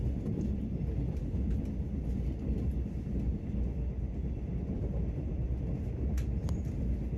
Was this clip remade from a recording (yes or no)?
no